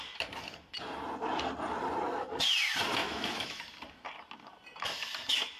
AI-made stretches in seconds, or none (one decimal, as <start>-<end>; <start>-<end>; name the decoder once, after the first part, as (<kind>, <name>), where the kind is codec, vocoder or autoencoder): 3.0-3.6 (autoencoder, DAC-VAE)